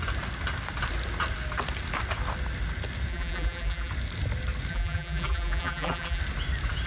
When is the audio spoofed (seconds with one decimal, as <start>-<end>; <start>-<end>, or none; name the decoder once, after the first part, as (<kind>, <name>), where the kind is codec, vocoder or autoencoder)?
3.1-3.9 (vocoder, BigVGAN v2); 4.7-6.2